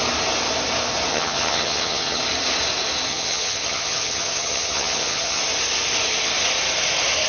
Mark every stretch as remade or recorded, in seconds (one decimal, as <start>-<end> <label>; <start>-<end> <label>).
0.0-1.1 recorded; 1.1-2.2 remade; 2.2-3.1 recorded; 3.1-5.4 remade; 5.4-7.3 recorded